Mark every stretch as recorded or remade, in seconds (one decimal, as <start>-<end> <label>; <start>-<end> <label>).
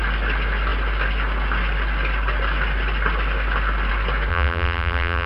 0.0-4.3 recorded; 4.3-5.3 remade